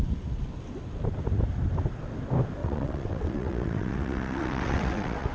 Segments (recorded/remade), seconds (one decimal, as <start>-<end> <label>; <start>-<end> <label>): 0.0-2.6 recorded; 2.6-5.3 remade